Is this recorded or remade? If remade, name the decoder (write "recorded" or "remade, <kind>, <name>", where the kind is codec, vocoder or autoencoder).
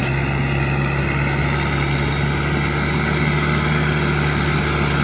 recorded